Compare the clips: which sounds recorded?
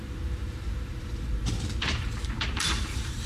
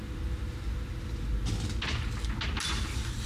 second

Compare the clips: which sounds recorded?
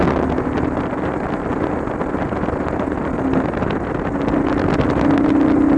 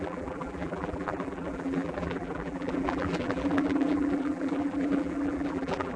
first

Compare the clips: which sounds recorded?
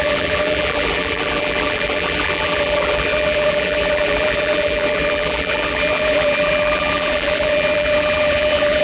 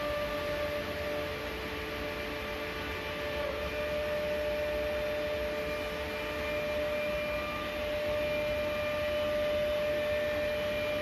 second